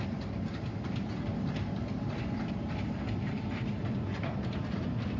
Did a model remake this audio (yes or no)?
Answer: no